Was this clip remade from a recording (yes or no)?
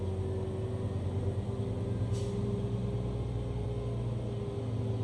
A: no